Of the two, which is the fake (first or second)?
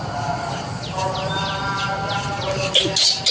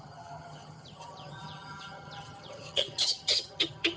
second